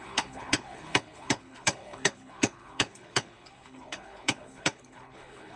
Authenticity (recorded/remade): remade